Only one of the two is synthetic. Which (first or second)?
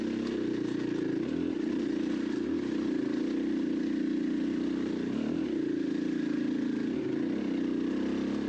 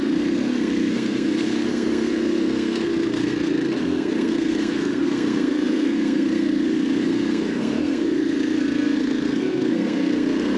second